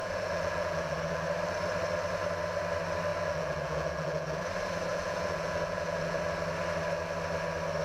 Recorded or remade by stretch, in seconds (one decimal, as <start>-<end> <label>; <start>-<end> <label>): 0.0-1.2 remade; 1.2-3.1 recorded; 3.1-4.4 remade; 4.4-4.9 recorded; 4.9-6.2 remade; 6.2-7.8 recorded